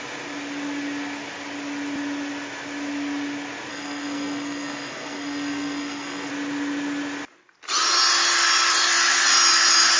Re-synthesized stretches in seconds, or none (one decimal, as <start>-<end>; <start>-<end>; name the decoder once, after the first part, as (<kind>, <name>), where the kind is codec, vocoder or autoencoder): 3.7-6.3 (codec, SNAC)